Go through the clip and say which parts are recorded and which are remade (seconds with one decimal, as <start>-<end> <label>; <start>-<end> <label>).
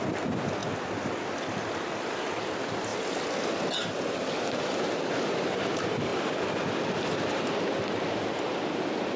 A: 0.0-9.2 recorded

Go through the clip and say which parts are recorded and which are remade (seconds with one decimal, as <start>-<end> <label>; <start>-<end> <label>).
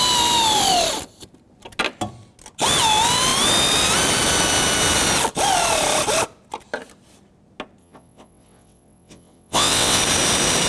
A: 0.0-7.8 recorded; 7.8-10.0 remade; 10.0-10.7 recorded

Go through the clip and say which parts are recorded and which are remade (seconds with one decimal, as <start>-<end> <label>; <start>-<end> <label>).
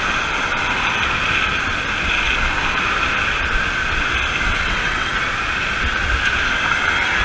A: 0.0-4.5 recorded; 4.5-5.1 remade; 5.1-7.2 recorded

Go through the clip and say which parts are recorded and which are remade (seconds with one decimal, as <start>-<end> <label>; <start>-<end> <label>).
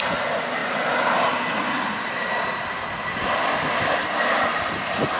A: 0.0-5.2 recorded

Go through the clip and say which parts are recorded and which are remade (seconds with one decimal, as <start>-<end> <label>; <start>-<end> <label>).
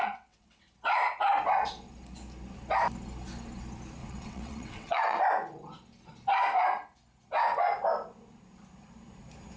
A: 0.0-0.6 remade; 0.6-4.0 recorded; 4.0-5.2 remade; 5.2-9.6 recorded